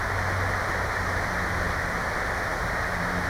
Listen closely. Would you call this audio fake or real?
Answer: real